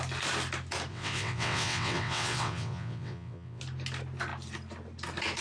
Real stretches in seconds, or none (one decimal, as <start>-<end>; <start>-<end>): 0.0-0.9; 3.6-5.4